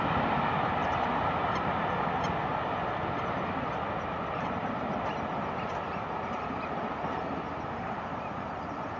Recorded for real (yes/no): yes